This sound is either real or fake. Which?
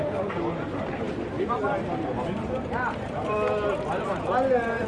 real